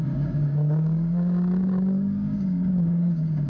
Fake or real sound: fake